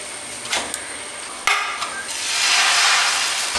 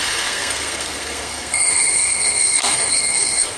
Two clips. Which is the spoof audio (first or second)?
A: second